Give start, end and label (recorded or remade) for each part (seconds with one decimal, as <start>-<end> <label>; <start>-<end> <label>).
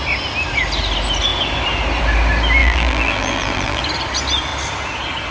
0.0-2.6 recorded; 2.6-3.8 remade; 3.8-5.3 recorded